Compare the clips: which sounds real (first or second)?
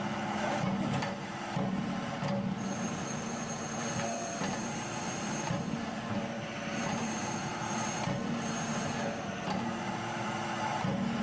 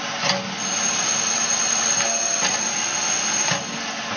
second